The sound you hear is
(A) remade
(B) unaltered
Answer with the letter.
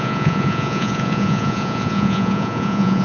A